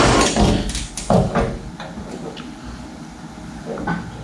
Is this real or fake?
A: real